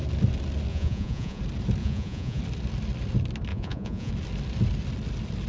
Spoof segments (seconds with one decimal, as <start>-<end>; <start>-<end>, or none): 0.7-1.4; 1.8-2.4; 3.5-4.1